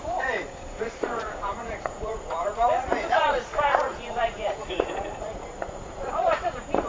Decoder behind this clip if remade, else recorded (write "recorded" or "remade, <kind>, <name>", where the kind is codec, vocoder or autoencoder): remade, vocoder, Vocos